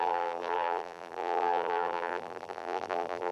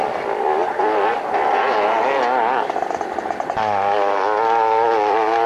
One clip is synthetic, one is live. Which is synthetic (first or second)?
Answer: first